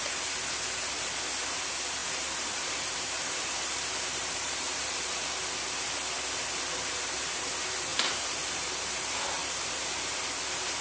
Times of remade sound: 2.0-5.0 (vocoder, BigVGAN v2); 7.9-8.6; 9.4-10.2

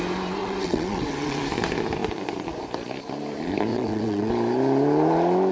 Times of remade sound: 0.4-1.4 (vocoder, WaveNeXt); 3.7-4.3

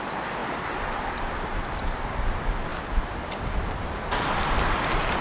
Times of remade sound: 0.4-1.9 (vocoder, BigVGAN v2); 2.7-3.7

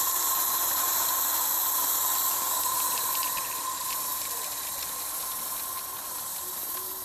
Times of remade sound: none